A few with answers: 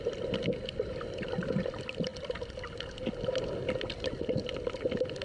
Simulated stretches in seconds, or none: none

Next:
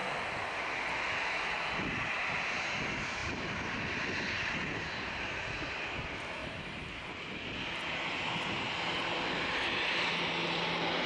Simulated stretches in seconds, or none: 3.2-5.3 (vocoder, BigVGAN v2); 6.4-7.1